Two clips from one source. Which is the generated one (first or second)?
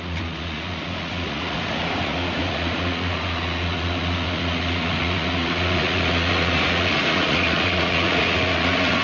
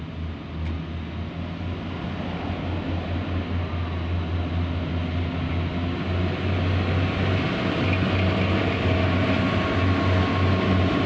first